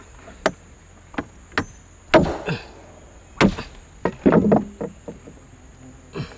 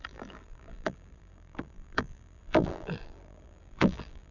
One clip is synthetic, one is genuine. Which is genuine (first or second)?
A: first